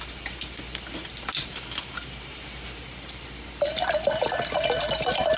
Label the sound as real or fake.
real